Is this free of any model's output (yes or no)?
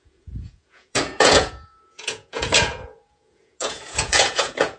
no